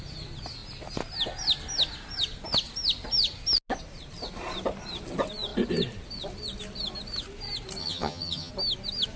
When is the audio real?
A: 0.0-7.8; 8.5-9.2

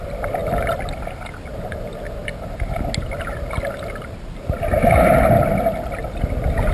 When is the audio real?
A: 0.0-6.7

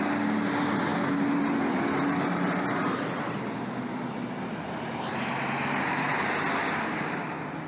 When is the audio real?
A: 0.0-7.7

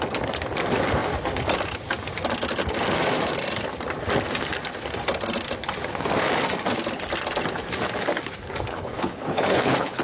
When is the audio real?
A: 0.0-8.7

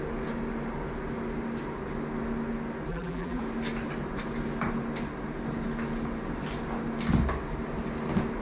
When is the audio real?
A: 0.0-2.9; 3.4-8.4

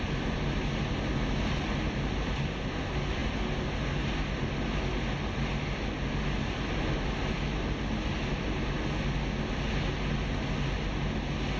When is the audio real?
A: 0.0-11.6